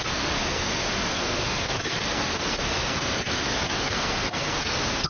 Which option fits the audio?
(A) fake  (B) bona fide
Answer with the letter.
A